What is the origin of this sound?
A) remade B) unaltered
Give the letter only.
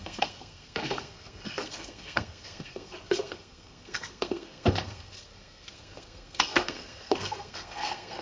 A